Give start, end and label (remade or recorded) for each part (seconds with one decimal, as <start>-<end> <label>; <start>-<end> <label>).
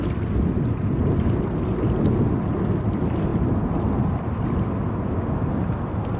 0.0-6.2 recorded